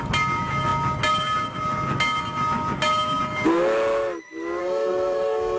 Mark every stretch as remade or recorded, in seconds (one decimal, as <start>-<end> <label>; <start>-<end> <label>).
0.0-4.6 recorded; 4.6-5.6 remade

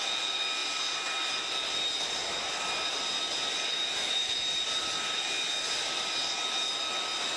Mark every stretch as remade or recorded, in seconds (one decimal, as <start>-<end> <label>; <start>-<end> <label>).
0.0-7.4 recorded